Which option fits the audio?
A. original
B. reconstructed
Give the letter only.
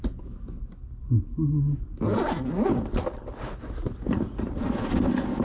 A